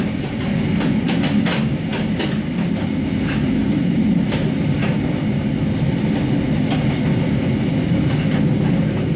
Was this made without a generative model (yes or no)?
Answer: yes